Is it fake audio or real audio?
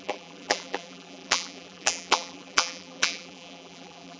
fake